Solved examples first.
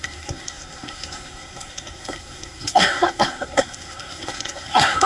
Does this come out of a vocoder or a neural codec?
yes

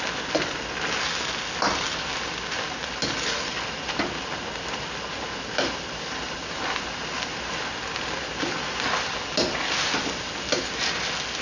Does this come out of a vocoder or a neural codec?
no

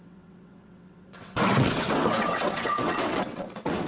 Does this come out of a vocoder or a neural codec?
yes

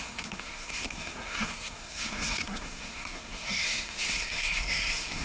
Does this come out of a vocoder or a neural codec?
yes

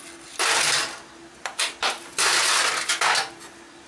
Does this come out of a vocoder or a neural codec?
no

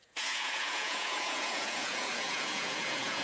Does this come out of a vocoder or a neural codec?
yes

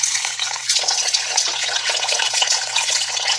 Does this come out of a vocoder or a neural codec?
yes